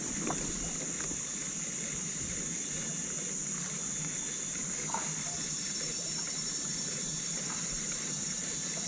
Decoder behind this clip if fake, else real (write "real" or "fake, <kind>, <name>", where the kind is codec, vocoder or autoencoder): real